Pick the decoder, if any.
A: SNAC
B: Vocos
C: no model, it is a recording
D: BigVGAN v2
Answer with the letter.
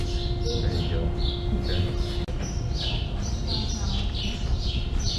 C